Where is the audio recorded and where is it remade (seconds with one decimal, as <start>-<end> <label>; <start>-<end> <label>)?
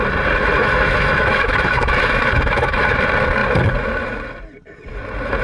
0.0-0.6 recorded; 0.6-3.0 remade; 3.0-5.4 recorded